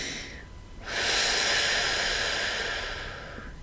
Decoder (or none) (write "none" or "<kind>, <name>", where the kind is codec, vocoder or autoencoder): none